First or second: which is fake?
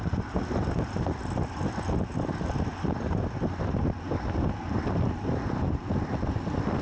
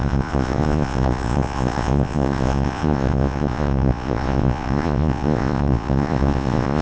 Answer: second